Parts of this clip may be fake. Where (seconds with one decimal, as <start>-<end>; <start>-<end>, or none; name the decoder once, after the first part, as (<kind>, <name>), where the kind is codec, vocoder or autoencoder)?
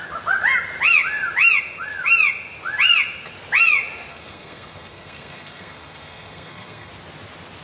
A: 4.1-6.9 (codec, SNAC)